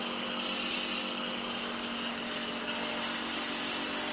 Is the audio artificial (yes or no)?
no